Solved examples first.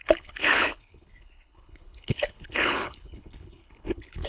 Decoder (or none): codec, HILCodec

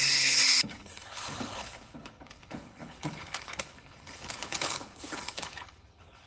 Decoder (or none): codec, HILCodec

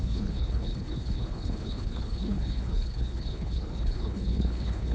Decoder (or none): codec, HILCodec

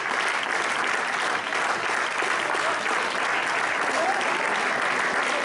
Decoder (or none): none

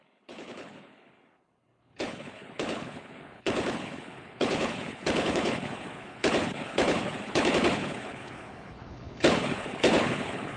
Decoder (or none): codec, HILCodec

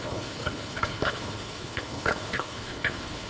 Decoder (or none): codec, HILCodec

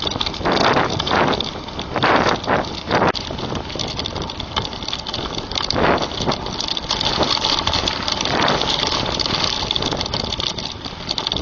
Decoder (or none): none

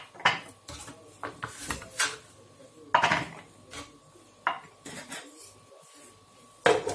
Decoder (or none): none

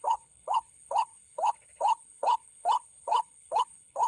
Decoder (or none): codec, HILCodec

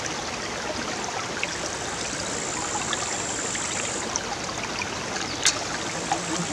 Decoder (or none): none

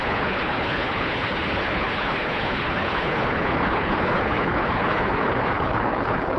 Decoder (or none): codec, HILCodec